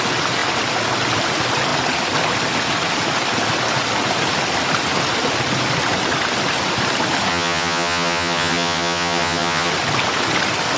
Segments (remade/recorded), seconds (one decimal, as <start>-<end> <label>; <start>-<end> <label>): 0.0-7.3 recorded; 7.3-9.7 remade; 9.7-10.8 recorded